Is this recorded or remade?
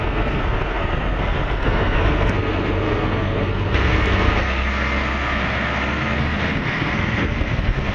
remade